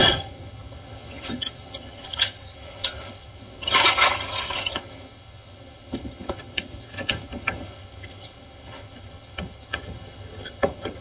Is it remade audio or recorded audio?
remade